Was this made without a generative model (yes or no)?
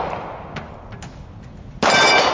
yes